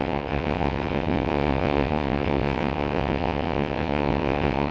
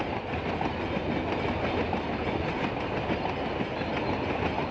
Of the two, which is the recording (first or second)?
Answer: second